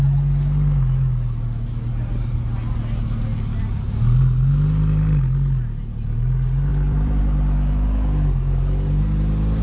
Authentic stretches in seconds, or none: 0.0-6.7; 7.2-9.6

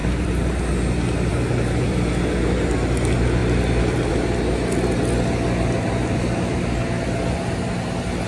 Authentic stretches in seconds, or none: 0.5-1.3; 2.1-8.3

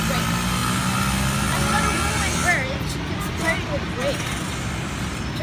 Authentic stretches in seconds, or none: 0.0-5.4

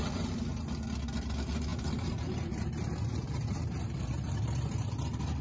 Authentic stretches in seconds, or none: 0.0-1.7; 4.9-5.4